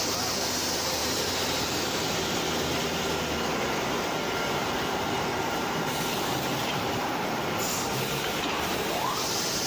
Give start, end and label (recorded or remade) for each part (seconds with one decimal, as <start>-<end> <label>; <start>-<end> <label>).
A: 0.0-1.0 recorded; 1.0-2.4 remade; 2.4-4.6 recorded; 4.6-6.0 remade; 6.0-6.6 recorded; 6.6-7.6 remade; 7.6-9.7 recorded

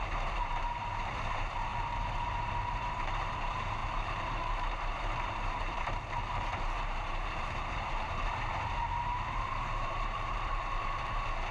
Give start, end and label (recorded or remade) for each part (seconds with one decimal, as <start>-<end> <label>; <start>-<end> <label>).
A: 0.0-11.5 remade

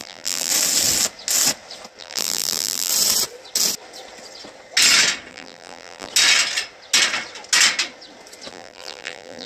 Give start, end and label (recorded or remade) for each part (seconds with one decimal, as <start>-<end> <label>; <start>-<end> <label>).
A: 0.0-0.5 remade; 0.5-2.0 recorded; 2.0-2.9 remade; 2.9-5.3 recorded; 5.3-6.1 remade; 6.1-8.5 recorded; 8.5-9.5 remade